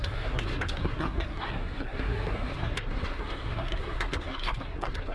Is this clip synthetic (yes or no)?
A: yes